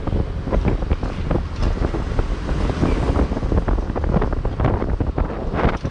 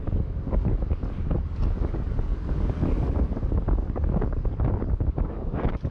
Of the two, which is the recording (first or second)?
first